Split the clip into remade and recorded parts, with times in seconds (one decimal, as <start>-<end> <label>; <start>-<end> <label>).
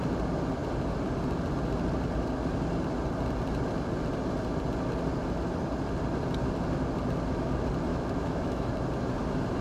0.0-7.9 recorded; 7.9-8.7 remade; 8.7-9.6 recorded